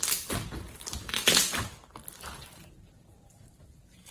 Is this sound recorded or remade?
remade